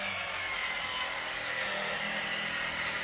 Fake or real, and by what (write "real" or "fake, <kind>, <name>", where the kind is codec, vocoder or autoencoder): real